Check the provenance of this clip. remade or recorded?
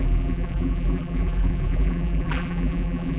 remade